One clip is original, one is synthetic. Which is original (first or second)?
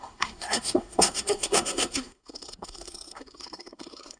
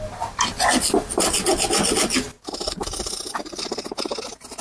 second